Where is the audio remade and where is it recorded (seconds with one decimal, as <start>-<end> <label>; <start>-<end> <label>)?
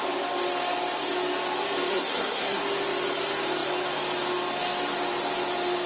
0.0-1.9 recorded; 1.9-2.6 remade; 2.6-5.9 recorded